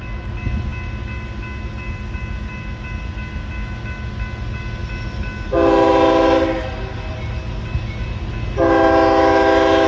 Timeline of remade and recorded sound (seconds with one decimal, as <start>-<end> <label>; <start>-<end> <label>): 0.0-9.9 recorded